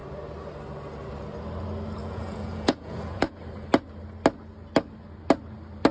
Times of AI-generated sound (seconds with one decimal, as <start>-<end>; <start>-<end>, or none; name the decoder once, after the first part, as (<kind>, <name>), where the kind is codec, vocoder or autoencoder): 2.0-3.3 (vocoder, Vocos)